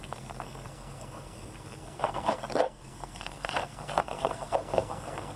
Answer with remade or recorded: remade